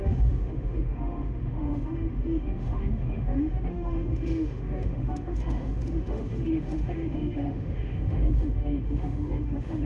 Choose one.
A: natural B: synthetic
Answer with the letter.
B